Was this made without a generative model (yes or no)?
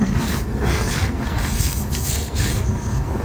no